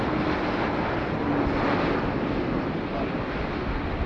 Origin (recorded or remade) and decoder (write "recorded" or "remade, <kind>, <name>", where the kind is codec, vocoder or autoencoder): recorded